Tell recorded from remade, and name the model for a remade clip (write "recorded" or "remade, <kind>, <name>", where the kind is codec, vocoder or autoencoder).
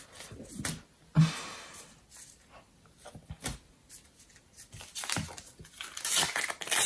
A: recorded